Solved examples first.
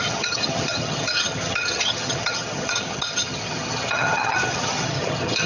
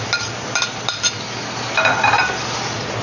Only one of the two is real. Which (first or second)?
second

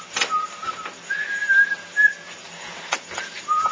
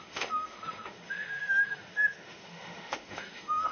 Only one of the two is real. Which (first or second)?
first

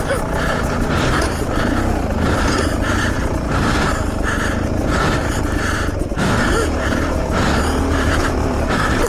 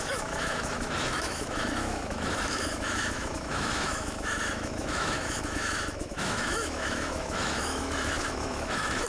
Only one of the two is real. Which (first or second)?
first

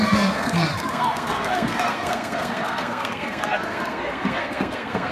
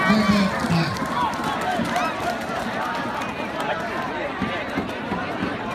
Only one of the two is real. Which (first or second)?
second